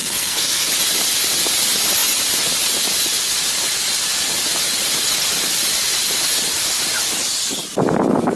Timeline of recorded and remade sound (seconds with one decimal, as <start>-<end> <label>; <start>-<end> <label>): 0.0-0.7 remade; 0.7-8.4 recorded